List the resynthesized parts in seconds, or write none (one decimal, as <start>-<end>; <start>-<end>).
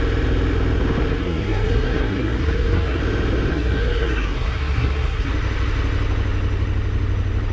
1.1-3.0; 3.5-5.3